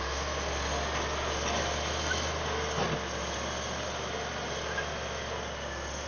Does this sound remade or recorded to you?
recorded